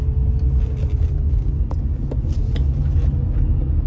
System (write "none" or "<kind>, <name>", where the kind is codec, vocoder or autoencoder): none